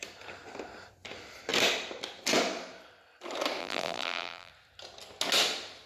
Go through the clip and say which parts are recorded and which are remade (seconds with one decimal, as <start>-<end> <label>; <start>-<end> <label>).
0.0-3.6 recorded; 3.6-4.5 remade; 4.5-5.9 recorded